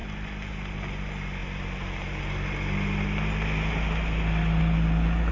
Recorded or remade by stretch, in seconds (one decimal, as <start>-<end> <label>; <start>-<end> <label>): 0.0-5.3 recorded